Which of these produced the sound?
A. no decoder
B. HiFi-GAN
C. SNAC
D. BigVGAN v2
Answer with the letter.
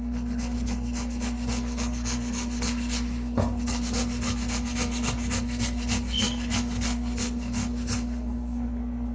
C